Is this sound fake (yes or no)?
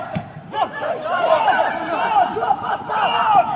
yes